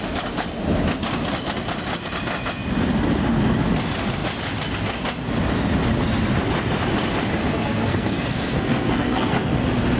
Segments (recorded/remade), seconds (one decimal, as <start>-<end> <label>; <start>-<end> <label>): 0.0-7.4 recorded; 7.4-9.6 remade; 9.6-10.0 recorded